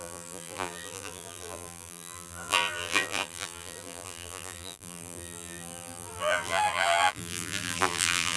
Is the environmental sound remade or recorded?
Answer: remade